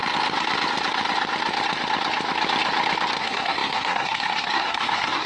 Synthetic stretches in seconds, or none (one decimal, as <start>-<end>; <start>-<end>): 3.2-5.3